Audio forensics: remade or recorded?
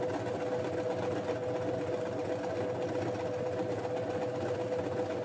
recorded